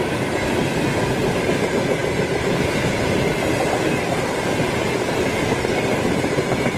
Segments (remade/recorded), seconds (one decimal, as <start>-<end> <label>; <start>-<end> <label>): 0.0-6.8 recorded

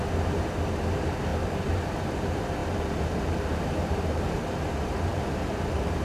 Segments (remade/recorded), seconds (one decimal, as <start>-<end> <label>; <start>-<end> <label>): 0.0-6.0 remade

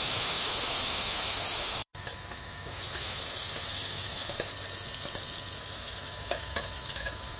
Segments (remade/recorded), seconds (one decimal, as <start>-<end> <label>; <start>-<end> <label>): 0.0-4.5 remade; 4.5-5.7 recorded; 5.7-7.4 remade

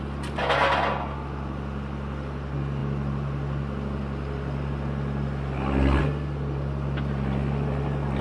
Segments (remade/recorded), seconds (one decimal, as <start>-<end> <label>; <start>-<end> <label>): 0.0-8.2 recorded

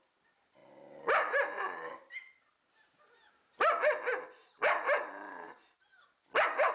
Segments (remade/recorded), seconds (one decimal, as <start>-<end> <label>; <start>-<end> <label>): 0.0-4.6 recorded; 4.6-5.9 remade; 5.9-6.7 recorded

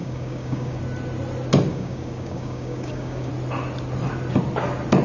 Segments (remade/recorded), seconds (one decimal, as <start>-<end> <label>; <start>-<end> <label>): 0.0-0.8 remade; 0.8-1.7 recorded; 1.7-3.3 remade; 3.3-5.0 recorded

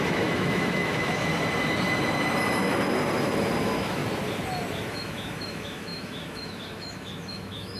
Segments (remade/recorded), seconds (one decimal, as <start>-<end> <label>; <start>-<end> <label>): 0.0-1.3 remade; 1.3-3.6 recorded; 3.6-4.0 remade; 4.0-4.9 recorded; 4.9-7.8 remade

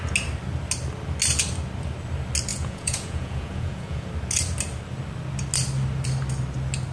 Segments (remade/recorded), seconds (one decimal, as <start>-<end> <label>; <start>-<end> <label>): 0.0-2.5 recorded; 2.5-4.1 remade; 4.1-6.9 recorded